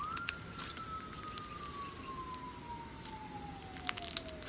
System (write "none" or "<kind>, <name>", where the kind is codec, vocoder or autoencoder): none